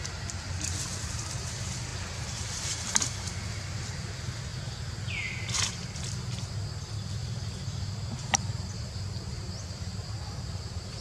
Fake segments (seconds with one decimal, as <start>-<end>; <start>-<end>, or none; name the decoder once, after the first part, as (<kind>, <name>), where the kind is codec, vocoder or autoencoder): 1.9-3.4 (vocoder, BigVGAN v2); 4.5-5.1; 7.2-11.0